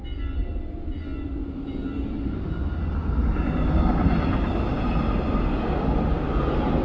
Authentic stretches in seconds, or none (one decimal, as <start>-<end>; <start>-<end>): 0.0-6.8